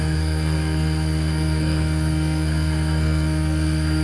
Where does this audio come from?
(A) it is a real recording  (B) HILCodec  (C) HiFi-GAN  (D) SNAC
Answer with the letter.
D